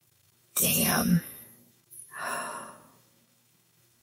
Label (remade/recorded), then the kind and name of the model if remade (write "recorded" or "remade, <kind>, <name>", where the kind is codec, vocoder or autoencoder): remade, autoencoder, DAC-VAE